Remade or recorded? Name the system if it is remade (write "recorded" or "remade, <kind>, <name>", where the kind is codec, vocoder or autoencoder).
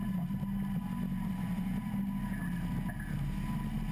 recorded